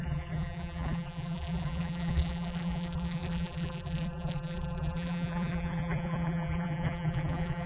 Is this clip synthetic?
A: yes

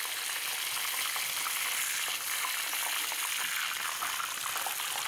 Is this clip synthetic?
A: no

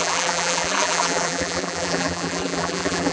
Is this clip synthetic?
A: yes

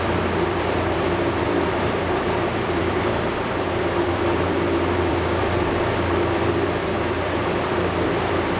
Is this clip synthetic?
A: yes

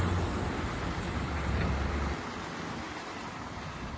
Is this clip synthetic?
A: no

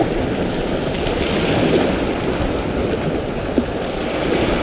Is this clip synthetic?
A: no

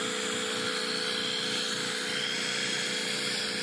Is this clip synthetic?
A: no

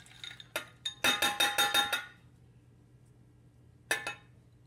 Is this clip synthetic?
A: no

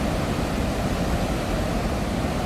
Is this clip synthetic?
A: no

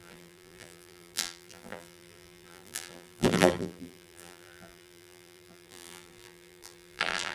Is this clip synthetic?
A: yes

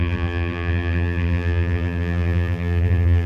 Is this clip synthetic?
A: yes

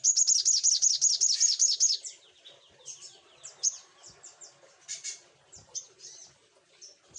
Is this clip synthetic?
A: no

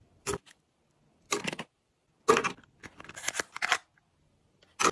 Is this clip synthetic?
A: no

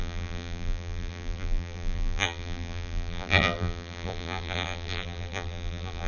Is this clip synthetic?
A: yes